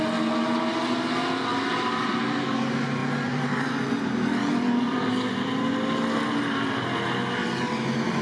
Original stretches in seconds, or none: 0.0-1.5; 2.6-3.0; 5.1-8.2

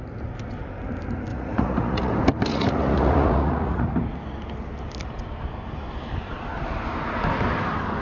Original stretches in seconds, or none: 0.0-1.3; 2.1-2.5; 3.9-8.0

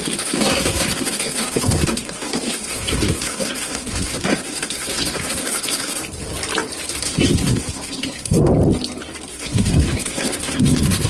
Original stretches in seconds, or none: 6.0-6.9; 8.5-9.3

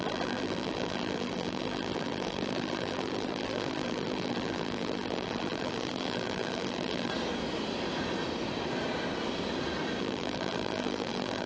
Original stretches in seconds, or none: 7.1-10.0

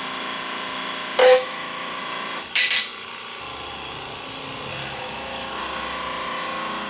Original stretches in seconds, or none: 0.0-1.2; 2.0-4.8; 5.6-6.9

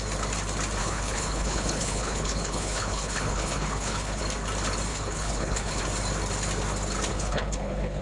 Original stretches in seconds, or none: 0.0-0.8; 4.2-4.9; 5.8-7.1

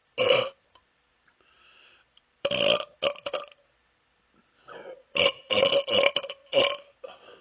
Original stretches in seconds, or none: 6.4-7.4

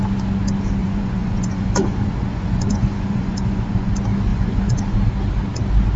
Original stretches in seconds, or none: 0.0-0.8; 3.9-4.3; 4.8-6.0